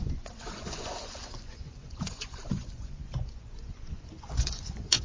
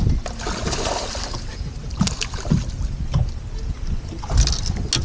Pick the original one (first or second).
second